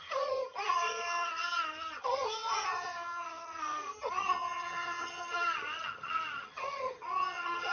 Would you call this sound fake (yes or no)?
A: yes